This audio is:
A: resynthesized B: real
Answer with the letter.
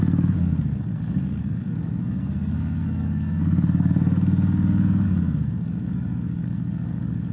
A